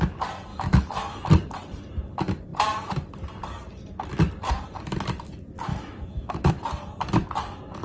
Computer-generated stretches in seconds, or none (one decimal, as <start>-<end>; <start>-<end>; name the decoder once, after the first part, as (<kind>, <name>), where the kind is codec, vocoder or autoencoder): 0.5-1.3 (autoencoder, DAC-VAE); 5.7-6.5